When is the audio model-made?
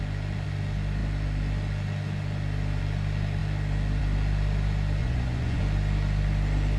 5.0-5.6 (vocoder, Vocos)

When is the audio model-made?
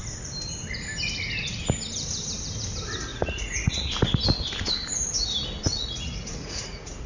3.1-3.9 (vocoder, Vocos); 5.7-7.1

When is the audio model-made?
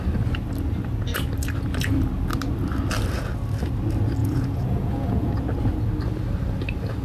4.2-5.3 (vocoder, Vocos)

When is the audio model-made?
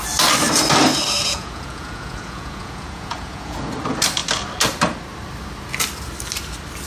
1.2-3.6 (vocoder, Vocos)